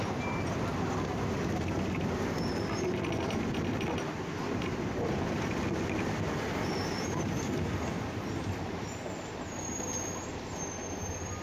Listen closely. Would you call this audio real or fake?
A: real